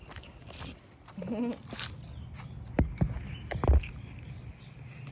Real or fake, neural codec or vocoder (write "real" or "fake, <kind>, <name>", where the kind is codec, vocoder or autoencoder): real